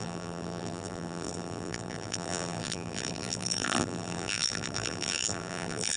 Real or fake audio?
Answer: fake